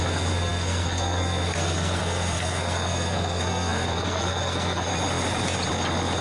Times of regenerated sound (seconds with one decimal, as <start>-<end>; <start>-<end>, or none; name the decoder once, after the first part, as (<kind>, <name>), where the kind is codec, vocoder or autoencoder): 0.0-4.9 (codec, SNAC)